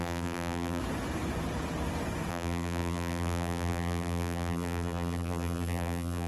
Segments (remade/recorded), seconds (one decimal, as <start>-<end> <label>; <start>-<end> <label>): 0.0-0.8 remade; 0.8-2.3 recorded; 2.3-6.3 remade